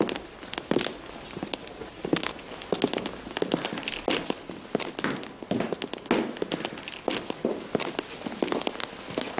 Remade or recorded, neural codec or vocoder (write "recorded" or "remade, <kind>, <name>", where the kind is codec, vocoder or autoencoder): recorded